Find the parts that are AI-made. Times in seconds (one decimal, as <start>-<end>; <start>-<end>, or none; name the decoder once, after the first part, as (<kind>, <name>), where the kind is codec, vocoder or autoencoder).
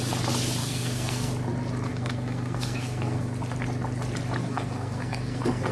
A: 0.6-1.3 (codec, SNAC); 1.9-3.3; 4.4-5.7